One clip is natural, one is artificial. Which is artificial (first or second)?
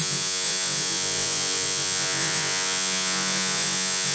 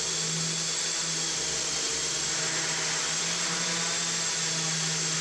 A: first